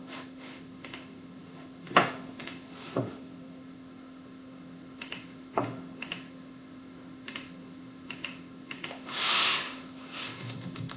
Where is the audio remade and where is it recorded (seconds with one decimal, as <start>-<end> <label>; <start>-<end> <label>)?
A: 0.0-11.0 remade